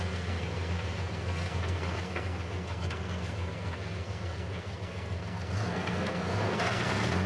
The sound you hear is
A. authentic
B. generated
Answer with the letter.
B